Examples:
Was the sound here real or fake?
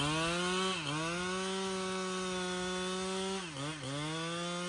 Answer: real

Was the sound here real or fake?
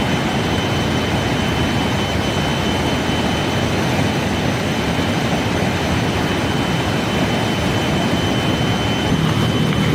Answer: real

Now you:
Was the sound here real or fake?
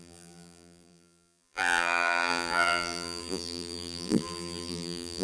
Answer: fake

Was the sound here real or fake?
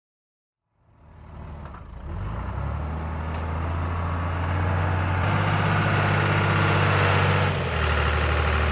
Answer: real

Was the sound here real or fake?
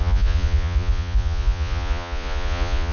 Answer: fake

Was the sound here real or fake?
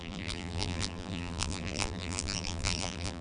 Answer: fake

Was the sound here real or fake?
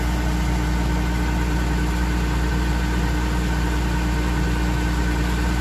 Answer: real